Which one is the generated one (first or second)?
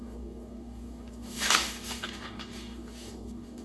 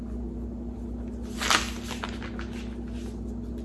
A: first